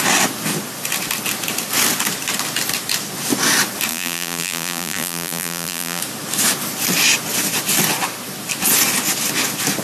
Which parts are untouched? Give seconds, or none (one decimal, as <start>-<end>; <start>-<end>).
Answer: 0.0-3.9; 6.0-9.8